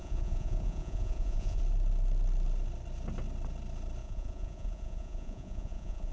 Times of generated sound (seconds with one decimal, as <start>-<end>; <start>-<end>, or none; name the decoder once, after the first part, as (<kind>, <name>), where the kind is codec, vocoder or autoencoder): 0.0-1.6 (vocoder, Vocos); 4.0-6.1